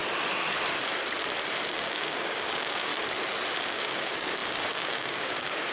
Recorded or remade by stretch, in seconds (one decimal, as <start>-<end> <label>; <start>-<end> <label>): 0.0-1.7 recorded; 1.7-2.9 remade; 2.9-3.5 recorded; 3.5-5.7 remade